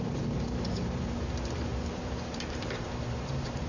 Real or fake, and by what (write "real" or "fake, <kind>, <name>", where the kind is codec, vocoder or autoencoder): fake, vocoder, BigVGAN v2